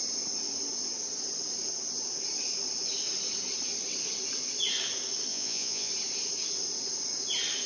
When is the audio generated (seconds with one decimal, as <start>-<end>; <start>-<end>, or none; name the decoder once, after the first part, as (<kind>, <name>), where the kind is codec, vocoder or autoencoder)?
5.3-5.9 (vocoder, Vocos)